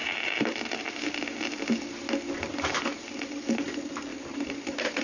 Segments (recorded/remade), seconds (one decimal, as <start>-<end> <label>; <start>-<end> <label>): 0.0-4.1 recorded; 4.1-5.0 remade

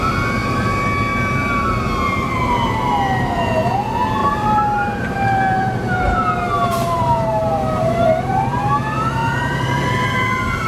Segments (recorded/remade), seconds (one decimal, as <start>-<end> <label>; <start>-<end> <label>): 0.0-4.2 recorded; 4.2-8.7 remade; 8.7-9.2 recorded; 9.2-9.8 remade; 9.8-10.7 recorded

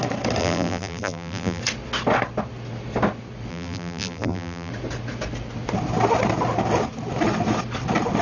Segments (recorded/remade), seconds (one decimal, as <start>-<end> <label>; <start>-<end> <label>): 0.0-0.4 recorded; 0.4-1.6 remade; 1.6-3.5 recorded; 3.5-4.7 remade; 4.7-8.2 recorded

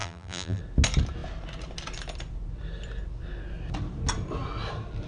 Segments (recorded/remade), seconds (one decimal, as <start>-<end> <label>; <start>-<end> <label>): 0.0-0.6 remade; 0.6-5.1 recorded

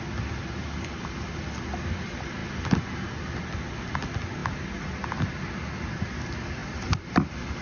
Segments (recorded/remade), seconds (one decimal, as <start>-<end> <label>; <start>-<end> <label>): 0.0-7.6 recorded

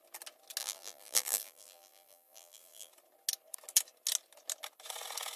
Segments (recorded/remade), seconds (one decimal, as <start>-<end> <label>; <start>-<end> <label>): 0.0-0.6 recorded; 0.6-2.9 remade; 2.9-5.4 recorded